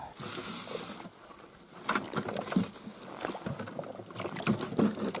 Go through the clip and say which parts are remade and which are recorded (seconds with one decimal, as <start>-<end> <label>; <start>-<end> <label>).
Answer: 0.0-5.2 recorded